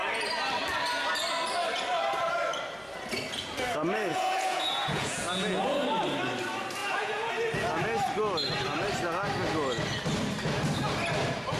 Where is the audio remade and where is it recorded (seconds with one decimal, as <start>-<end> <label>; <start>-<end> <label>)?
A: 0.0-4.1 recorded; 4.1-5.8 remade; 5.8-6.8 recorded; 6.8-7.3 remade; 7.3-11.6 recorded